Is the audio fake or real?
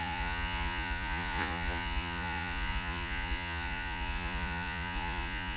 fake